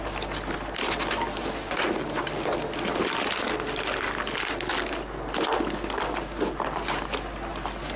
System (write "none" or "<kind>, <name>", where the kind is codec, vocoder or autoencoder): none